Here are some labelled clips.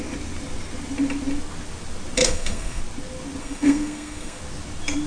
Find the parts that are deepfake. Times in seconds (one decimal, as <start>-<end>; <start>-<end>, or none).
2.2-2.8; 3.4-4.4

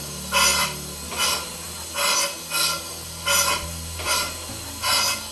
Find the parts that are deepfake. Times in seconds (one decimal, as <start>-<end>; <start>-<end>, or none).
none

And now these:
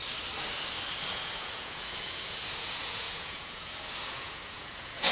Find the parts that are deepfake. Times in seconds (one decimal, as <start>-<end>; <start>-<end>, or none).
1.1-5.1

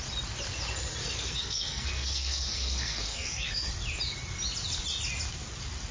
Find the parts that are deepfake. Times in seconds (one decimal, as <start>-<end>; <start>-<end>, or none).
1.0-3.7

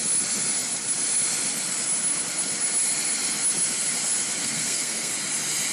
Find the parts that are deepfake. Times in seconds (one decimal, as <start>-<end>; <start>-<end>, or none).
4.4-5.1

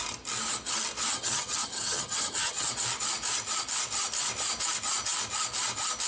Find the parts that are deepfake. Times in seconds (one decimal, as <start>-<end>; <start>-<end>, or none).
1.1-2.7